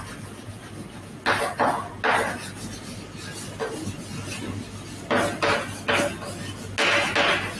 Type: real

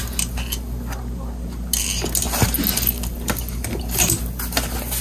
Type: real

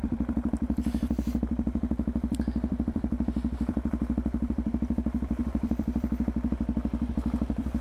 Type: fake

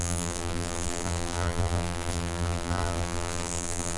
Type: fake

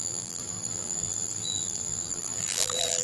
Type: fake